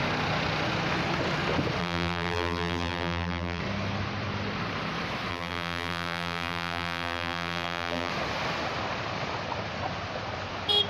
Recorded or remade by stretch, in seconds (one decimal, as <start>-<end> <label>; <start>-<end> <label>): 0.0-1.8 recorded; 1.8-3.6 remade; 3.6-5.3 recorded; 5.3-8.1 remade; 8.1-10.9 recorded